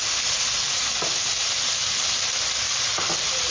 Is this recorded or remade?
recorded